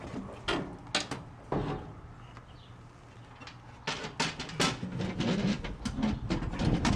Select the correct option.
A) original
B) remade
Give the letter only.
A